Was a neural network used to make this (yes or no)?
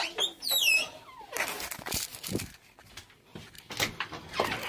no